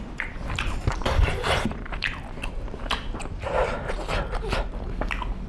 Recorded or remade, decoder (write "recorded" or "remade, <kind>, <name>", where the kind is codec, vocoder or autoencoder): remade, vocoder, BigVGAN v2